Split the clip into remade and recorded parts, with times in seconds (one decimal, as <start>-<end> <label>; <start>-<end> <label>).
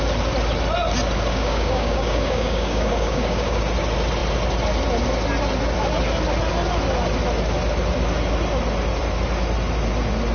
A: 0.0-1.3 recorded; 1.3-3.6 remade; 3.6-10.3 recorded